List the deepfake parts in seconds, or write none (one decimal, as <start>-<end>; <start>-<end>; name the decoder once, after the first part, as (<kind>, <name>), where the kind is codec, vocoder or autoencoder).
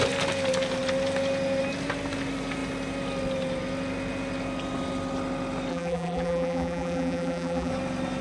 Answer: 5.7-7.7 (vocoder, BigVGAN v2)